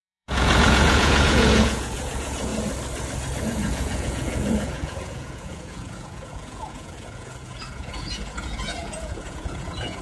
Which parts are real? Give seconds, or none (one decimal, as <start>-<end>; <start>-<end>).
2.5-3.4